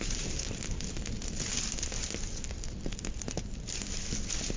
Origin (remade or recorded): recorded